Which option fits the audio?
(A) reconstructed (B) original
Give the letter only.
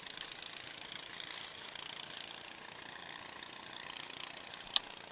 B